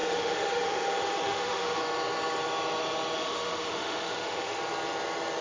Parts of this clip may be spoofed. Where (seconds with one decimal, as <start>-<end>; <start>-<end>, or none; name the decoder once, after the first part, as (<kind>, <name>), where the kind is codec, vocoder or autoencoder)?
0.0-1.8 (autoencoder, DAC-VAE); 3.2-4.6